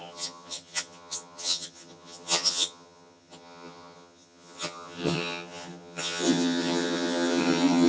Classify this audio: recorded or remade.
remade